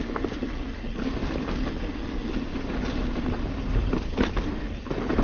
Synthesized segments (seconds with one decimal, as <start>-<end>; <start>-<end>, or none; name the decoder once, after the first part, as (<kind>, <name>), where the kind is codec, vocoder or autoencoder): 2.5-4.3 (vocoder, BigVGAN v2)